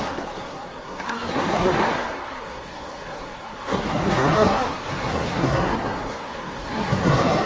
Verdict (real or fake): fake